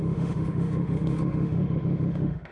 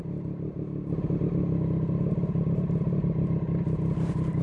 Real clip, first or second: second